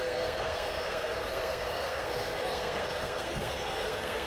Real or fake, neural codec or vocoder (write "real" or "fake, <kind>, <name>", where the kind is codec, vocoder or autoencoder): fake, codec, SNAC